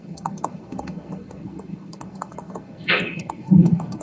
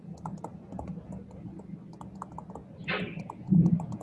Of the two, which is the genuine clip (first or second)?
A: second